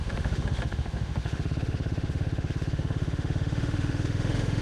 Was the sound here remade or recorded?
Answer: remade